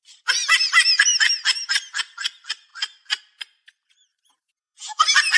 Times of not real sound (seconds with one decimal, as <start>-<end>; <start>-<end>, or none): 4.1-5.0